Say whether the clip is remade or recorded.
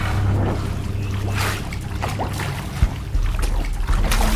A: recorded